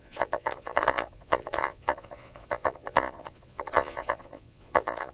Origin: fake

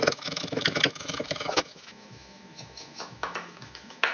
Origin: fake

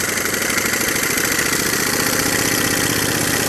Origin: real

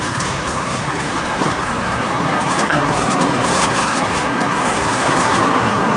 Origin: fake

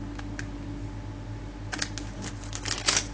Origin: real